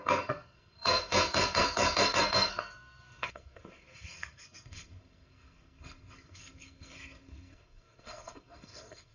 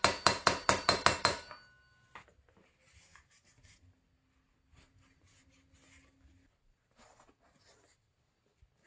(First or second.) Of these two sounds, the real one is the second